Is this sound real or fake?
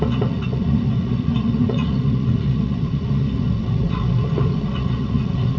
fake